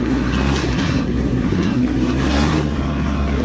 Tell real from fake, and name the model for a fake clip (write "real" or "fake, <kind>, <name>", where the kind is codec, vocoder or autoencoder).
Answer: fake, codec, SNAC